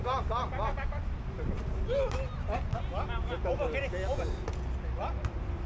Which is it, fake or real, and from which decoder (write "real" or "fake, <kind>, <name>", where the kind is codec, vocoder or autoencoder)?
real